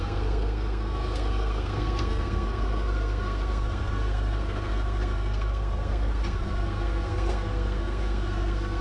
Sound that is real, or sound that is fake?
fake